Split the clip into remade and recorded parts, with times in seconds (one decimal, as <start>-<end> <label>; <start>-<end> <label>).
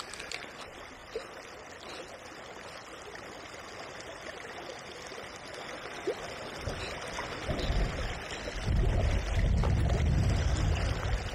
0.0-1.0 recorded; 1.0-4.3 remade; 4.3-11.3 recorded